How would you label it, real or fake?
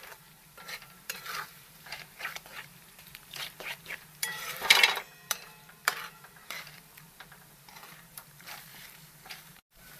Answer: fake